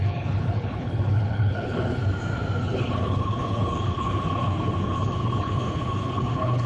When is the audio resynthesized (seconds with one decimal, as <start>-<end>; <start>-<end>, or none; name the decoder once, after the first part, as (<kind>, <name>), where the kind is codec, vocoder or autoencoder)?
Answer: 0.0-2.0 (codec, HILCodec); 2.6-6.7